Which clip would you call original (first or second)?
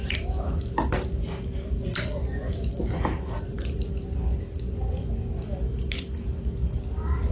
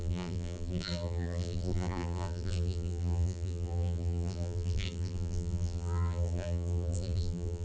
first